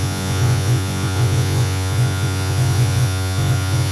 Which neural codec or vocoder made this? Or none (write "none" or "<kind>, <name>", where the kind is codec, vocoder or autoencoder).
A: vocoder, Vocos